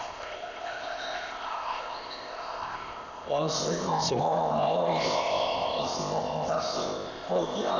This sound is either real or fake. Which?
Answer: fake